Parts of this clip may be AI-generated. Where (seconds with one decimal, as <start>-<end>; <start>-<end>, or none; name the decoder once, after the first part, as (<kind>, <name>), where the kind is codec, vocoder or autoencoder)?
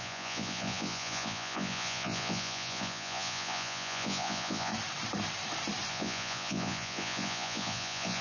0.0-4.7 (vocoder, Vocos); 5.9-8.2